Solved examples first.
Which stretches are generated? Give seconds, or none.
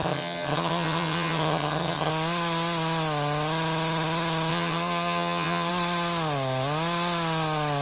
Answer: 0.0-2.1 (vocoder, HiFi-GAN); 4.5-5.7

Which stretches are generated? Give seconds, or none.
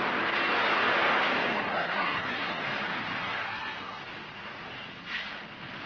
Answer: 1.5-2.6 (codec, SNAC); 3.2-4.0